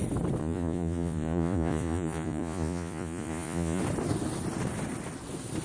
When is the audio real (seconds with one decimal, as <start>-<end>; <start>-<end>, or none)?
0.0-0.4; 3.8-5.6